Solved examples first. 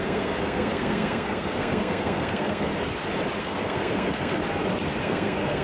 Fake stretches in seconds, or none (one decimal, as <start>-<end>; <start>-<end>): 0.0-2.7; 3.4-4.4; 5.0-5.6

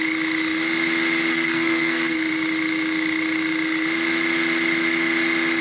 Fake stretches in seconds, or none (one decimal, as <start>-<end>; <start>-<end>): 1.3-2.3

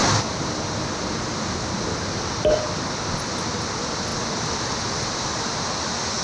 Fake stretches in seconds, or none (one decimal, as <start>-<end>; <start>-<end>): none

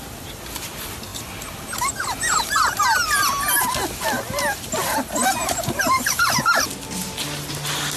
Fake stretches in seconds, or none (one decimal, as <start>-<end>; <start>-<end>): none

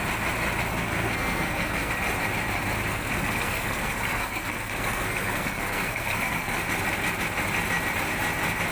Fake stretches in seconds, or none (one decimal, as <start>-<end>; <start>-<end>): 0.7-1.9; 2.9-6.6